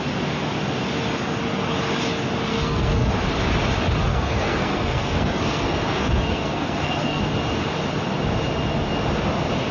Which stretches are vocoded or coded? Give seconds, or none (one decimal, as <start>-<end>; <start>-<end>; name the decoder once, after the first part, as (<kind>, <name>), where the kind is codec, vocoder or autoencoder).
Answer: 2.5-3.1 (codec, SNAC); 4.1-7.2